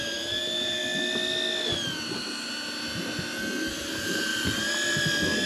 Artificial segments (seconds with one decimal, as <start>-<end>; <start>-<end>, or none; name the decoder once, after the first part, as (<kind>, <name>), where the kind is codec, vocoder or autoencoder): 0.0-0.8 (vocoder, BigVGAN v2); 3.7-4.3